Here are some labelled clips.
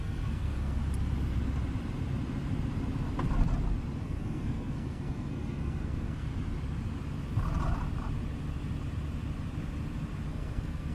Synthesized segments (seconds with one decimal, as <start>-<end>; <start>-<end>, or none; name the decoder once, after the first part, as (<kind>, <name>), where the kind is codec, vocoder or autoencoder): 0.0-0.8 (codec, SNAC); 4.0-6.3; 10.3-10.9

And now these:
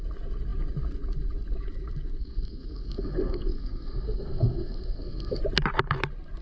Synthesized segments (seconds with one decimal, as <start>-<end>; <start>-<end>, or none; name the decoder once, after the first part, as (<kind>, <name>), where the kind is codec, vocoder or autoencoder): 2.2-5.4 (codec, SNAC)

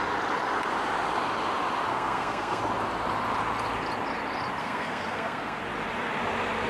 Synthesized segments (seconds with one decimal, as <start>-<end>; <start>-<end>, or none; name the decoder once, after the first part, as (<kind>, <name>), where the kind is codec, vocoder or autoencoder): 1.9-2.6 (codec, SNAC); 4.6-5.6

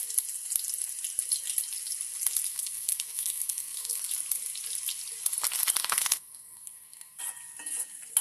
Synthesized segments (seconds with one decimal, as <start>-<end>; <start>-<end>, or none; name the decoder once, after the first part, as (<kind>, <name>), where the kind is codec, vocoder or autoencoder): 2.5-4.0 (codec, SNAC); 5.8-7.2